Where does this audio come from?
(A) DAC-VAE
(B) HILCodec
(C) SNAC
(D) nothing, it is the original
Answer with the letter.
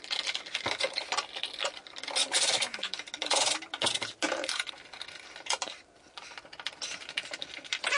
D